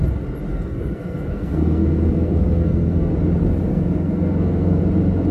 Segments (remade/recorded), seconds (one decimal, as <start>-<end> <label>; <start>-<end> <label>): 0.0-0.5 recorded; 0.5-3.1 remade; 3.1-3.7 recorded; 3.7-4.8 remade; 4.8-5.3 recorded